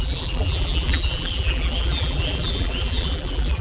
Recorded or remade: remade